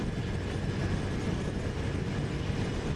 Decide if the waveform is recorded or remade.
recorded